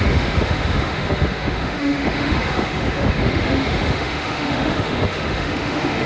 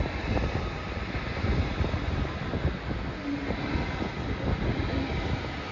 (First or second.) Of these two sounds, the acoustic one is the second